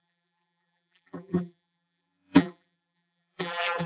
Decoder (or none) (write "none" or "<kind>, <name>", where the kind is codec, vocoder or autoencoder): vocoder, BigVGAN v2